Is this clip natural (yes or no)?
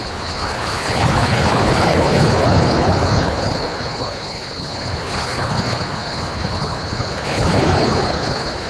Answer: no